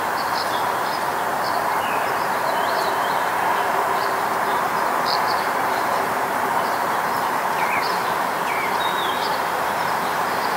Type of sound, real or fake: fake